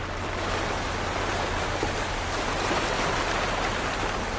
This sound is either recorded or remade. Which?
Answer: recorded